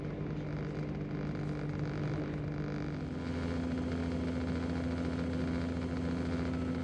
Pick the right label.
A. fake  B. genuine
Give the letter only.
B